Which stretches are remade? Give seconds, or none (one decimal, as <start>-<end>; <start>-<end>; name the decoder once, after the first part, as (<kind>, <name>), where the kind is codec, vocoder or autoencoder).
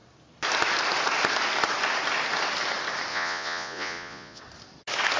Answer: 3.1-4.4 (vocoder, Vocos)